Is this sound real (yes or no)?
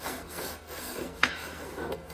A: no